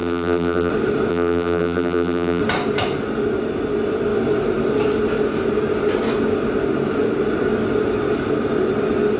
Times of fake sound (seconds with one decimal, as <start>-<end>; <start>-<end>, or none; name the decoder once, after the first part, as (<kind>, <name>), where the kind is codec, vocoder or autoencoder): 0.0-0.7 (vocoder, BigVGAN v2); 1.1-2.4